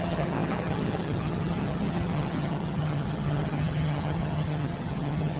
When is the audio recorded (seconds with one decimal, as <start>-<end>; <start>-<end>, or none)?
none